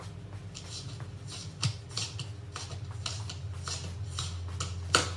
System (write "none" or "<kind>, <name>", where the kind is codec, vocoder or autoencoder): none